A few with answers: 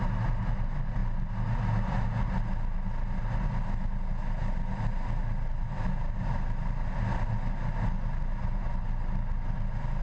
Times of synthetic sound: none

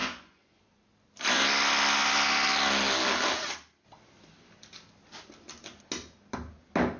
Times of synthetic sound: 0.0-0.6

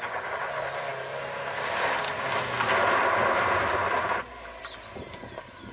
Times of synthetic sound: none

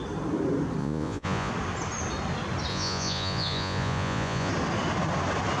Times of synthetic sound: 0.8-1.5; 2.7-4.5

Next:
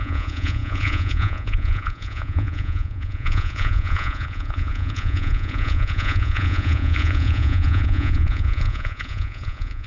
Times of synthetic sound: 0.0-9.9

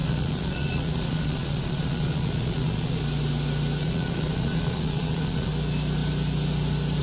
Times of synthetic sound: 0.0-3.0; 3.8-5.5